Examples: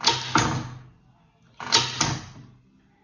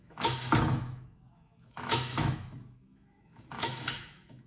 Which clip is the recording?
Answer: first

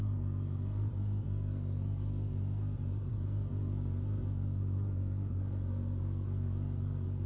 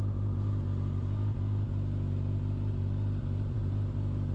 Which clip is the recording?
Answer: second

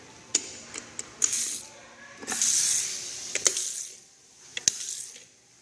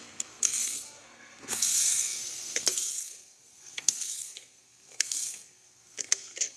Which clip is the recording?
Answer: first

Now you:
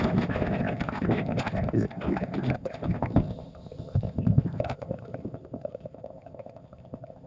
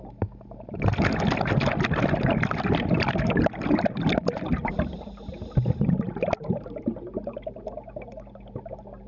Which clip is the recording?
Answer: second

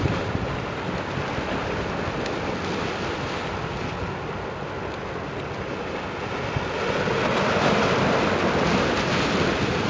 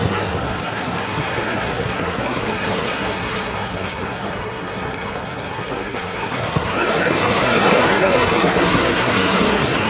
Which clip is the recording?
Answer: first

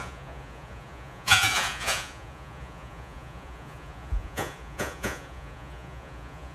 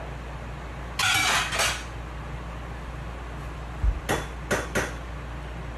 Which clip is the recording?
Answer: second